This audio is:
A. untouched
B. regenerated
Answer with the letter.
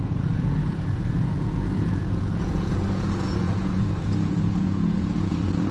B